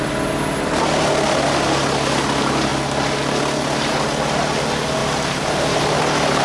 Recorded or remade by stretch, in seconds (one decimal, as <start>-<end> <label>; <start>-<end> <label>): 0.0-5.0 recorded; 5.0-6.0 remade; 6.0-6.4 recorded